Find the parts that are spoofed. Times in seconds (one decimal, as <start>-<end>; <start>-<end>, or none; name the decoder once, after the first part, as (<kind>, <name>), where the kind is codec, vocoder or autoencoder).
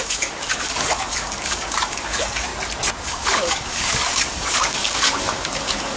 0.0-2.5 (codec, DAC); 3.0-6.0